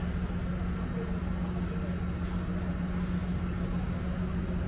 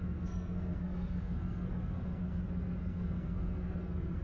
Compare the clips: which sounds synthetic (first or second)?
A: second